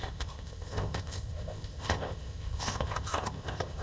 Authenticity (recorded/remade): remade